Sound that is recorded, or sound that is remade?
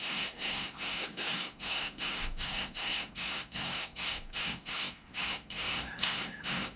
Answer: remade